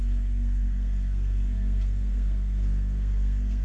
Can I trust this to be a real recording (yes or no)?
no